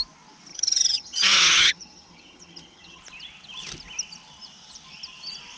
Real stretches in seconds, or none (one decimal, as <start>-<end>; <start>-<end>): 0.0-0.5; 3.0-5.6